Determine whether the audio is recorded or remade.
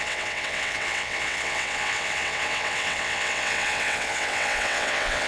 remade